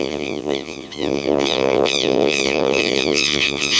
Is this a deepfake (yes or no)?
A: yes